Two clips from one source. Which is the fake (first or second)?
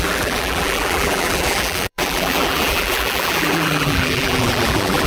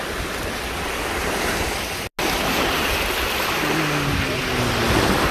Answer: first